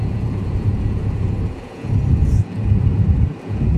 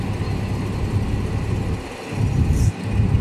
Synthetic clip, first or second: first